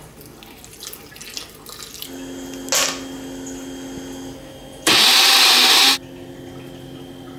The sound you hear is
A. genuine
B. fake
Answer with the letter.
A